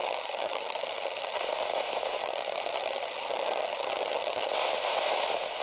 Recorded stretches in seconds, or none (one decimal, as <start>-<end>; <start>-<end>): 1.4-2.2; 4.5-5.6